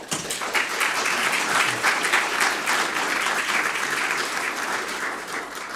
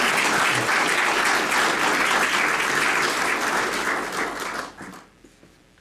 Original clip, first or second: second